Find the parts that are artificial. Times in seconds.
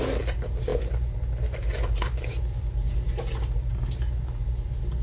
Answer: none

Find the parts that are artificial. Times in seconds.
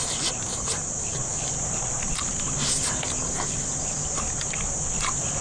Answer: none